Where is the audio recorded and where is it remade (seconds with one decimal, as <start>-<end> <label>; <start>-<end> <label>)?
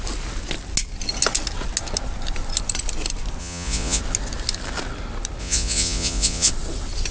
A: 0.0-3.4 recorded; 3.4-4.0 remade; 4.0-5.4 recorded; 5.4-6.5 remade; 6.5-7.1 recorded